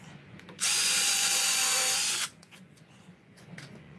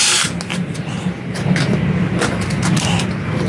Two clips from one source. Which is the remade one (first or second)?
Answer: first